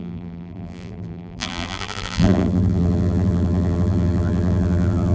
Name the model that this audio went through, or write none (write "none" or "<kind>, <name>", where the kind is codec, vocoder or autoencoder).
vocoder, BigVGAN v2